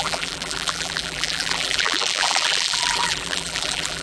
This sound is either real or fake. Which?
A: fake